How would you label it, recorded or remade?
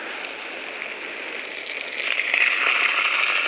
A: recorded